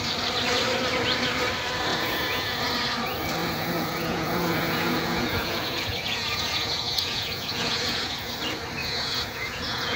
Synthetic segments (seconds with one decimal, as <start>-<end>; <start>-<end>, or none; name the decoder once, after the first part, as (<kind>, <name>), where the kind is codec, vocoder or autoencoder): 1.9-2.6 (vocoder, Vocos); 3.4-8.3; 8.8-10.0